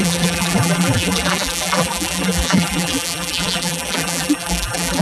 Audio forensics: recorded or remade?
remade